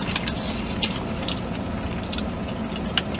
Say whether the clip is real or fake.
real